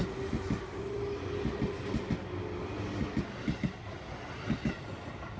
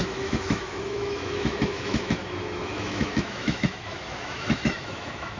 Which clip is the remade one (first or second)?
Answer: second